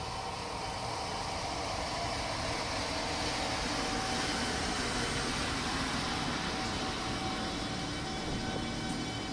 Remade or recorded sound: recorded